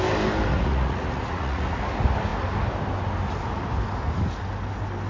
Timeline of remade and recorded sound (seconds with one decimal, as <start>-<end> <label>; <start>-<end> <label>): 0.0-0.5 recorded; 0.5-1.8 remade; 1.8-5.1 recorded